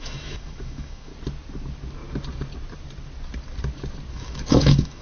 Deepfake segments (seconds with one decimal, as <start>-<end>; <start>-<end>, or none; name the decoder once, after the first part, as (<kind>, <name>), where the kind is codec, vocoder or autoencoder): 0.0-1.1 (autoencoder, DAC-VAE); 4.1-5.0